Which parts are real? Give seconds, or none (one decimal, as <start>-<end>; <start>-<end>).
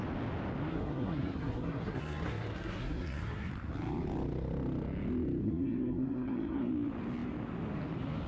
0.0-0.7; 3.5-5.4; 6.7-8.3